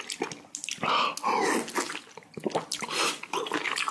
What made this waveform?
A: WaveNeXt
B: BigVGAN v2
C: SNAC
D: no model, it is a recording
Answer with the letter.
D